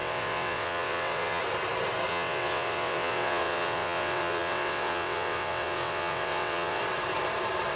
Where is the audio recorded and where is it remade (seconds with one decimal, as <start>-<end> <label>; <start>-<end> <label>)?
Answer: 0.0-1.4 remade; 1.4-2.1 recorded; 2.1-6.8 remade; 6.8-7.8 recorded